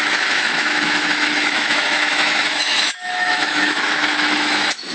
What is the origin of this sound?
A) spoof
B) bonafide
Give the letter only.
A